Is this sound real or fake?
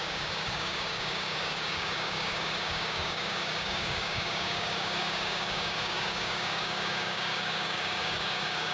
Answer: fake